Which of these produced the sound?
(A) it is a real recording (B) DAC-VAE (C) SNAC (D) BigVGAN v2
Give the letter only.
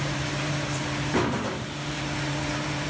D